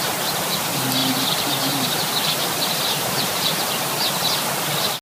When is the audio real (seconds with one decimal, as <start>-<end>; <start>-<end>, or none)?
0.0-1.0; 4.0-5.0